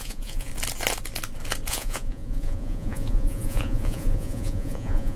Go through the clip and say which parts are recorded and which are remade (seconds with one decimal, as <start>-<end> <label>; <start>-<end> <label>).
0.0-0.5 remade; 0.5-1.7 recorded; 1.7-5.2 remade

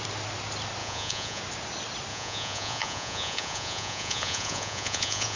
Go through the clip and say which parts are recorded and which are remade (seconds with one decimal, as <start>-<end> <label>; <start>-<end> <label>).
0.0-0.8 recorded; 0.8-1.4 remade; 1.4-2.1 recorded; 2.1-5.4 remade

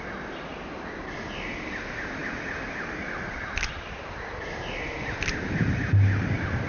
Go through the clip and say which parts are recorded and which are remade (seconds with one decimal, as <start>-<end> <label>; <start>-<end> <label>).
0.0-6.7 recorded

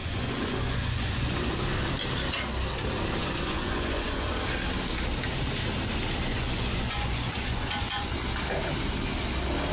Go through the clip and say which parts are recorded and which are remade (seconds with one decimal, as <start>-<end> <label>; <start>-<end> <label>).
0.0-1.5 remade; 1.5-3.2 recorded; 3.2-4.3 remade; 4.3-6.3 recorded; 6.3-8.1 remade; 8.1-9.7 recorded

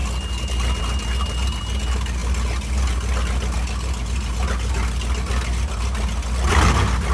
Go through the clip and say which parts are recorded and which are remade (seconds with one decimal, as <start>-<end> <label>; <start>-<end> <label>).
0.0-7.1 recorded

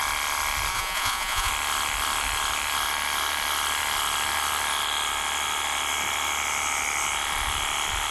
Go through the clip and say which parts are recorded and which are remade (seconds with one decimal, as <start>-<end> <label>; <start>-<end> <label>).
0.0-0.7 recorded; 0.7-1.5 remade; 1.5-8.1 recorded